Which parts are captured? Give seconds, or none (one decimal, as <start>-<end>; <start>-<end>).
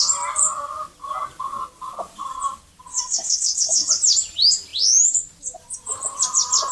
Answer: 0.0-2.9; 3.9-6.7